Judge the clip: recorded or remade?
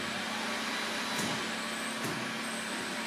recorded